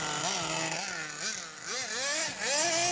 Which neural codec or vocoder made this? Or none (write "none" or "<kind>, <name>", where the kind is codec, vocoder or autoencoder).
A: none